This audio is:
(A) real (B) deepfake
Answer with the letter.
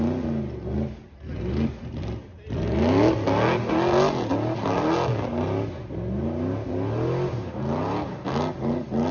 A